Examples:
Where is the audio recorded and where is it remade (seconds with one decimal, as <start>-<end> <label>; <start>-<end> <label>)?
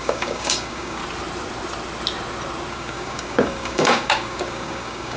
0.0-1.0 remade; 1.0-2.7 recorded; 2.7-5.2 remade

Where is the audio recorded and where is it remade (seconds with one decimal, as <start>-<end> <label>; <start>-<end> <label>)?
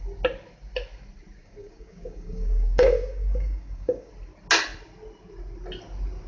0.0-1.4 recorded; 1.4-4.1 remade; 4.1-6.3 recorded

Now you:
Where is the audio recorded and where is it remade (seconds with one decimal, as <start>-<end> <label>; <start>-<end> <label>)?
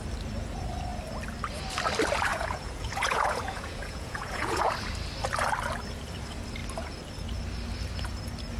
0.0-2.3 recorded; 2.3-4.7 remade; 4.7-8.6 recorded